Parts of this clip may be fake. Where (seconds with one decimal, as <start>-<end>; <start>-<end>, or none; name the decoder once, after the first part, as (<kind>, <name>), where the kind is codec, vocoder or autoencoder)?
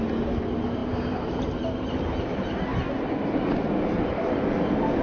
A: none